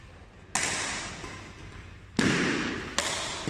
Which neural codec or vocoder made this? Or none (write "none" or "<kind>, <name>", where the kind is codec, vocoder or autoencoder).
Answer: none